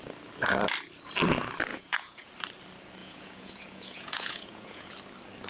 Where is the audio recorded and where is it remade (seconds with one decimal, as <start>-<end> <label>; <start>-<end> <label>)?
0.0-1.7 recorded; 1.7-2.3 remade; 2.3-3.0 recorded; 3.0-4.9 remade; 4.9-5.5 recorded